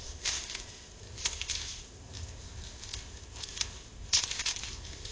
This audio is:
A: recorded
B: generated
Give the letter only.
B